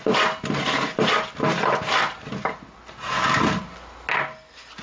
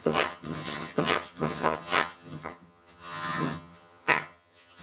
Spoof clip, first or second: second